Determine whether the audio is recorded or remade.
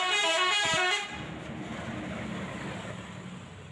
recorded